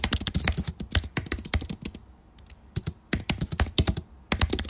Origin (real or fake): real